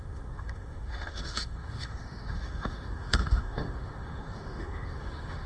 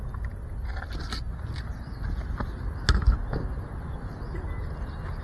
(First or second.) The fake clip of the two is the first